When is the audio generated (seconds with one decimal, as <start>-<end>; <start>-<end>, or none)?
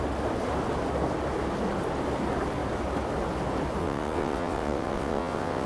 3.8-5.7